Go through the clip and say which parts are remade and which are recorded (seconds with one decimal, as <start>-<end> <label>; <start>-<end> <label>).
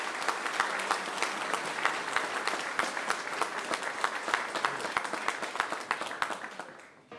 0.0-7.2 recorded